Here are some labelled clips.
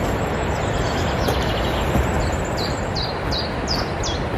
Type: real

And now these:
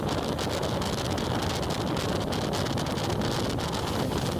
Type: real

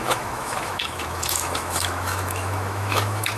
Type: fake